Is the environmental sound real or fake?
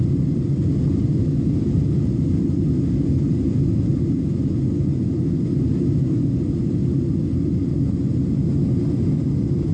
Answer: real